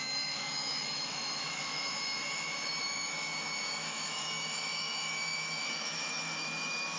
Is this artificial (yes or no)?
yes